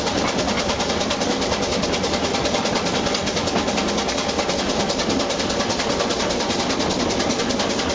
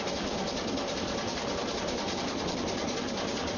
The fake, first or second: second